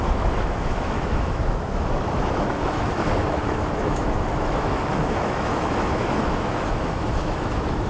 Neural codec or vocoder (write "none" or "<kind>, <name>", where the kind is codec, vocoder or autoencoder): autoencoder, DAC-VAE